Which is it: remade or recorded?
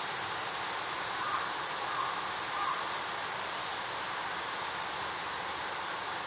recorded